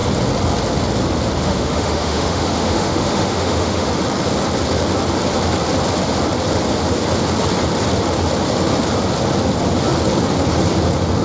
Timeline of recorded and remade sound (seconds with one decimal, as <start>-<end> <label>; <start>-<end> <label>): 0.0-1.4 recorded; 1.4-3.9 remade; 3.9-11.2 recorded